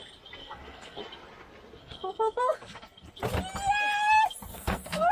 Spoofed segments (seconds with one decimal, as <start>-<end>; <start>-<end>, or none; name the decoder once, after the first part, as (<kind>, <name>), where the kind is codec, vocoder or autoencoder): 0.4-1.0 (codec, SNAC); 1.8-3.1; 4.5-5.1